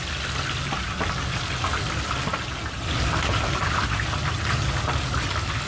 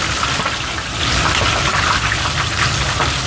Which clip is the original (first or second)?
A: second